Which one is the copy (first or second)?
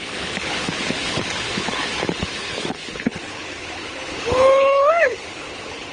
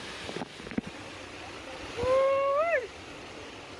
first